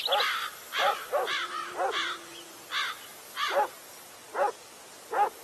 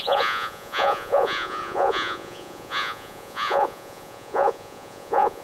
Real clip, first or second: first